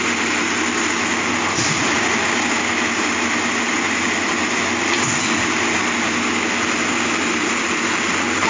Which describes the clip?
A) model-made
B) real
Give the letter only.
B